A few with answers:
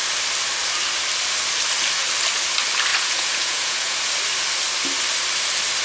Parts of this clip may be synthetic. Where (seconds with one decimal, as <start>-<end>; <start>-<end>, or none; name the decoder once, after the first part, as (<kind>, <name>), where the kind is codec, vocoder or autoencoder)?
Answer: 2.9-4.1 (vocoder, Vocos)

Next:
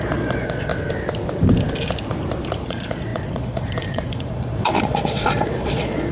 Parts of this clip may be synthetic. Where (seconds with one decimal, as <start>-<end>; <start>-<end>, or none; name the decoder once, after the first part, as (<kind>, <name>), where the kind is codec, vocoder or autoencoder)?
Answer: 0.0-0.7 (vocoder, Vocos); 2.6-6.1

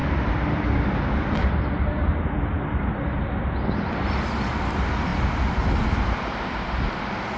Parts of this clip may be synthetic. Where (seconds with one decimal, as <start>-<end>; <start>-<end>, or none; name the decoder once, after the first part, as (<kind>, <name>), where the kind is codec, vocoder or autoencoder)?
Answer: 0.0-1.6 (vocoder, BigVGAN v2); 2.1-2.7

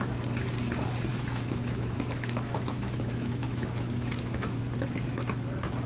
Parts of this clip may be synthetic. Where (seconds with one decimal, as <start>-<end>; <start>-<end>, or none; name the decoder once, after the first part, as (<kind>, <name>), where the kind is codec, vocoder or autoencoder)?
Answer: 1.1-4.6 (autoencoder, DAC-VAE)